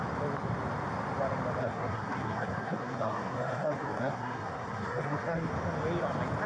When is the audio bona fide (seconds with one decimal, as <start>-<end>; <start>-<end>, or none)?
0.0-1.6; 5.5-6.5